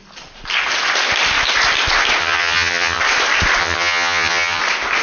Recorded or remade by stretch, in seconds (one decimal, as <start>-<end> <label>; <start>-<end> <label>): 0.0-2.2 recorded; 2.2-3.0 remade; 3.0-3.6 recorded; 3.6-4.6 remade; 4.6-5.0 recorded